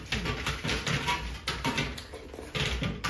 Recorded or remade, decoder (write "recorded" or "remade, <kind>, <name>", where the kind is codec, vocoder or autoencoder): recorded